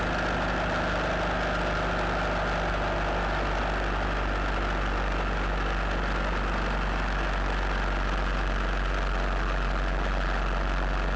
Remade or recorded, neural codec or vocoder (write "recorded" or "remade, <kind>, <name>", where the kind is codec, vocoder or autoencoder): recorded